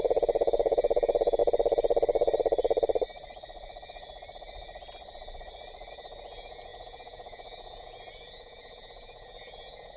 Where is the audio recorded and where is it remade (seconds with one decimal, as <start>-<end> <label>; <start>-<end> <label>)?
0.0-1.4 remade; 1.4-5.9 recorded; 5.9-10.0 remade